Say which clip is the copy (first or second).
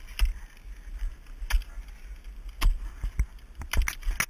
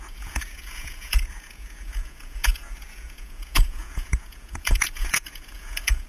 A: second